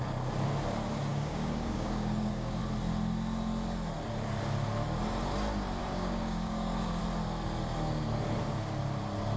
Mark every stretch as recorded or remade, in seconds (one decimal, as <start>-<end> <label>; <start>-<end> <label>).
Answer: 0.0-1.1 recorded; 1.1-2.6 remade; 2.6-5.8 recorded; 5.8-7.0 remade; 7.0-9.4 recorded